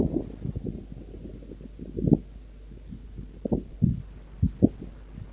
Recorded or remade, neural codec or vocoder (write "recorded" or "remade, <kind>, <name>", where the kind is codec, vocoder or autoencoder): recorded